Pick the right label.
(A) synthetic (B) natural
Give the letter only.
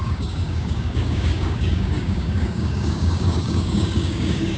A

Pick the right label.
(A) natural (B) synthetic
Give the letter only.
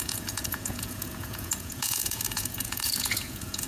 B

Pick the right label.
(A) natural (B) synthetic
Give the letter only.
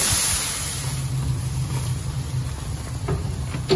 A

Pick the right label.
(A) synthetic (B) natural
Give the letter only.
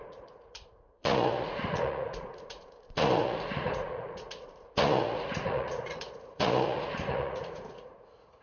A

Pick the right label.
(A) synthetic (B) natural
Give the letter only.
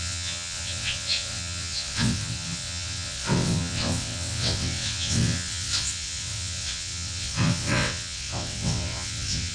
A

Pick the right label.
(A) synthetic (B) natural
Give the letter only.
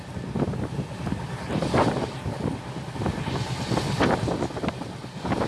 B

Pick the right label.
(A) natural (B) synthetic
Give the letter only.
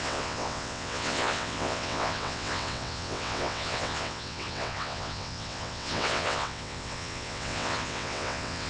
B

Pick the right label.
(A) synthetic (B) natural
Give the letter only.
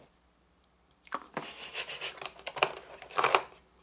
A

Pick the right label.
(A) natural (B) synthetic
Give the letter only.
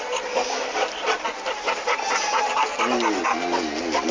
A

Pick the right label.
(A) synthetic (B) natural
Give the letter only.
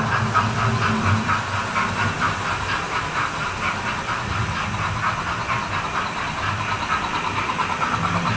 B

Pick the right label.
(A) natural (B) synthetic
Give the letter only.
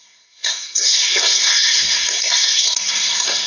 B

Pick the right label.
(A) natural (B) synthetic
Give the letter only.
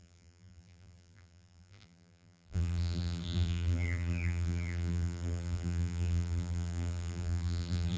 B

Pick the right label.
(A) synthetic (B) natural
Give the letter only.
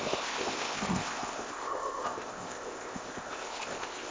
A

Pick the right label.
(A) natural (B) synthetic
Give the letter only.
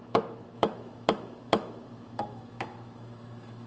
B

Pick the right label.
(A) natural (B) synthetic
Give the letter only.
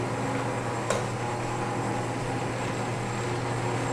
A